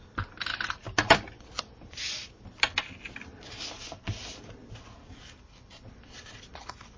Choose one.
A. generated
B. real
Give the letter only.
B